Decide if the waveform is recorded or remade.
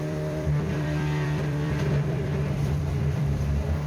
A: remade